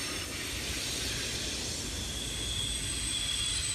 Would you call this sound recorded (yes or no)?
yes